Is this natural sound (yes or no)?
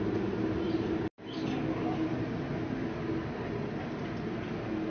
yes